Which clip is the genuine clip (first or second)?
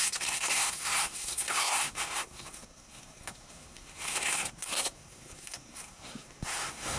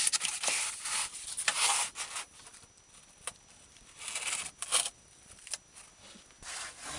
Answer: second